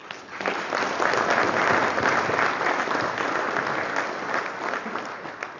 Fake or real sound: real